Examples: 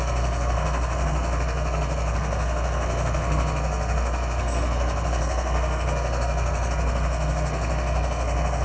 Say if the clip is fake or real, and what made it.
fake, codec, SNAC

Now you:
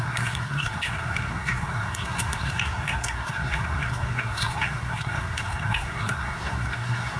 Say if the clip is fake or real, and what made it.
fake, codec, SNAC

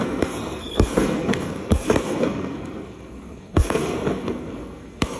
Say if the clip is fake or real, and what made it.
fake, codec, SNAC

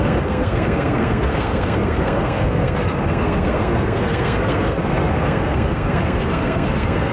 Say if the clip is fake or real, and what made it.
fake, codec, SNAC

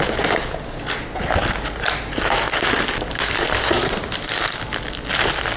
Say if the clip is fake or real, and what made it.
real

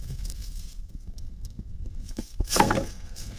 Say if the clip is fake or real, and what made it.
fake, codec, SNAC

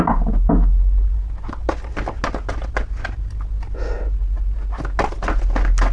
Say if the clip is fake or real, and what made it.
real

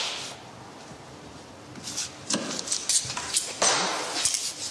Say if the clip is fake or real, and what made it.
real